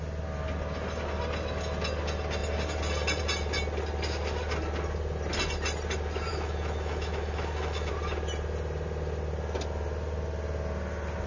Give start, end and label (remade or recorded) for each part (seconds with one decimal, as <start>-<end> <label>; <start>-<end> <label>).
0.0-6.3 recorded; 6.3-7.9 remade; 7.9-11.3 recorded